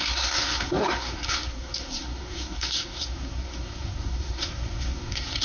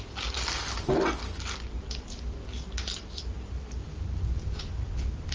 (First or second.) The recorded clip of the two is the second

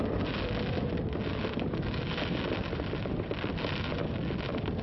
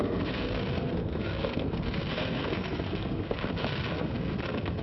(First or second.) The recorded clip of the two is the first